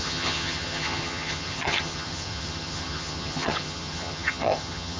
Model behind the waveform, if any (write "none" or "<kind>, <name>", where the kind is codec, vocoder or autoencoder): vocoder, HiFi-GAN